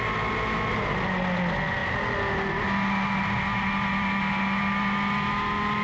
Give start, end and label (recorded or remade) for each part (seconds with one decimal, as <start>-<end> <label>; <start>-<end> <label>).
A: 0.0-5.8 recorded

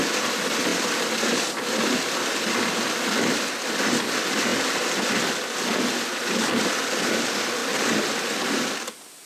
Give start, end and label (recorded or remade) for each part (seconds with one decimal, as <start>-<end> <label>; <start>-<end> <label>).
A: 0.0-9.3 recorded